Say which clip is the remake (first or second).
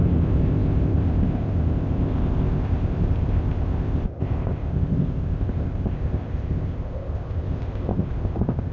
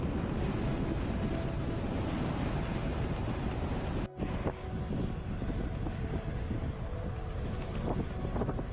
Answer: first